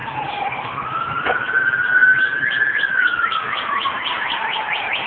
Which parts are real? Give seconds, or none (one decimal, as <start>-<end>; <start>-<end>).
1.3-5.1